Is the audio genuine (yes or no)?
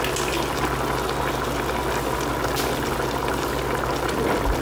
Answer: yes